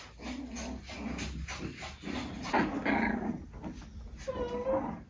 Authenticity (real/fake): real